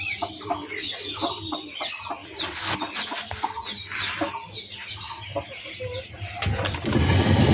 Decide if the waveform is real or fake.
real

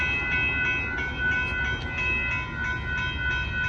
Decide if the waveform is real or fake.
real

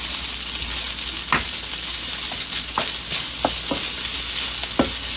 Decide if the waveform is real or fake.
real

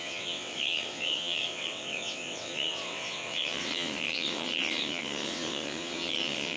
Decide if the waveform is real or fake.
fake